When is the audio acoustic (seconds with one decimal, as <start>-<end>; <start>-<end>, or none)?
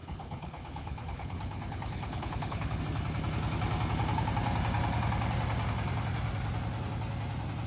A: 2.8-7.7